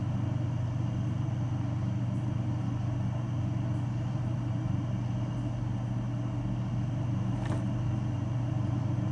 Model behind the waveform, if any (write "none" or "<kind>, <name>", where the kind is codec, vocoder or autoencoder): none